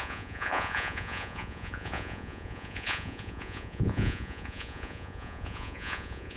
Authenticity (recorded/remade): remade